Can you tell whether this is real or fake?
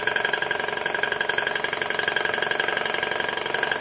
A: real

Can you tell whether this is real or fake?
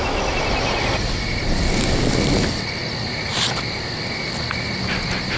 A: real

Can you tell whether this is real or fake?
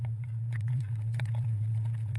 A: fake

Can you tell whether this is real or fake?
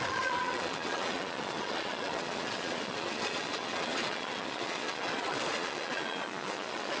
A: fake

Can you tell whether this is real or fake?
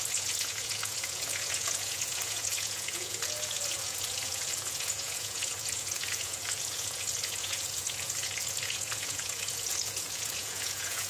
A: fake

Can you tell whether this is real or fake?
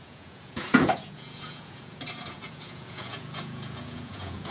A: fake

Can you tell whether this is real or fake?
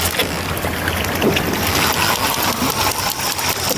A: real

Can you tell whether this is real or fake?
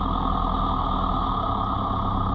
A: real